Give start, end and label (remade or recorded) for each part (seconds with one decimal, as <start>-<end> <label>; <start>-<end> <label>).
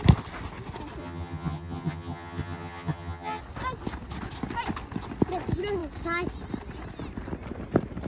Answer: 0.0-1.0 recorded; 1.0-3.4 remade; 3.4-8.1 recorded